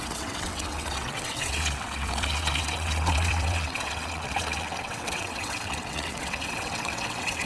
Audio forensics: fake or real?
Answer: fake